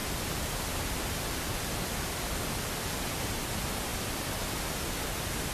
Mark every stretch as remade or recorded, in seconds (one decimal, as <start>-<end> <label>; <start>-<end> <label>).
0.0-5.5 recorded